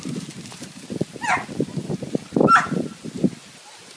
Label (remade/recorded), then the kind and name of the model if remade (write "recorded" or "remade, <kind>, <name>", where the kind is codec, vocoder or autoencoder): recorded